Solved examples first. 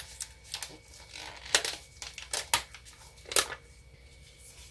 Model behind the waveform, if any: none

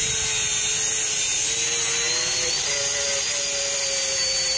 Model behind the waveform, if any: none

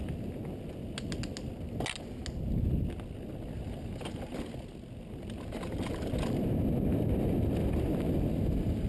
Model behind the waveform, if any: none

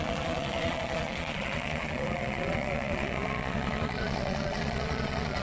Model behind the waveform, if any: vocoder, Vocos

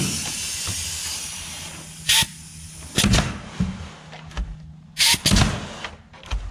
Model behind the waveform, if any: none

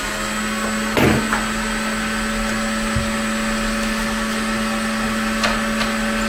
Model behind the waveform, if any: none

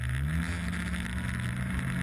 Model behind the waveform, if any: none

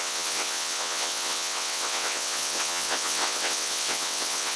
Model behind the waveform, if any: vocoder, WaveNeXt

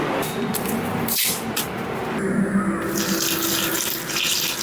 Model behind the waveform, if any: none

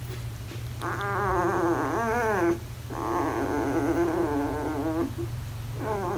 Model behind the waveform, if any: none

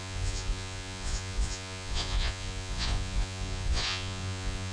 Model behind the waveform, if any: vocoder, Vocos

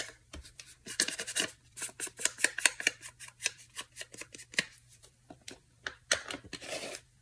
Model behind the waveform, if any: vocoder, BigVGAN v2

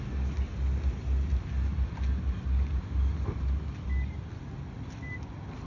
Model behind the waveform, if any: none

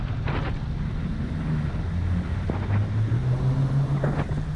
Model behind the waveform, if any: none